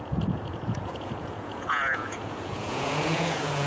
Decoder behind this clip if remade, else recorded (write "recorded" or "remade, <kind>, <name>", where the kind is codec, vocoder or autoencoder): remade, vocoder, Vocos